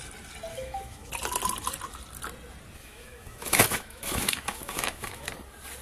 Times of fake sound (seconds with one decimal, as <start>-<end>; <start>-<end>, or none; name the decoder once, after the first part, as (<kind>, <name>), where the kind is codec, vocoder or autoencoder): 0.5-1.1 (autoencoder, DAC-VAE); 2.8-5.3